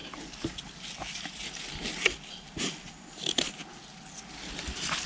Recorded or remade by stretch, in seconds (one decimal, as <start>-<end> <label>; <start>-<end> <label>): 0.0-5.1 recorded